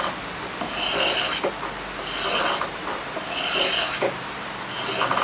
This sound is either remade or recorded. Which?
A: recorded